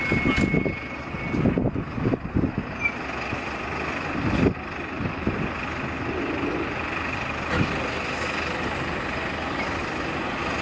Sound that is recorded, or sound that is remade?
recorded